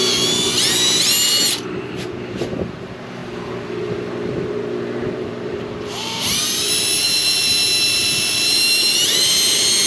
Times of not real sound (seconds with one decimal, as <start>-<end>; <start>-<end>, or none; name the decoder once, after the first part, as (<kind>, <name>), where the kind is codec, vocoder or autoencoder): 2.3-9.9 (vocoder, BigVGAN v2)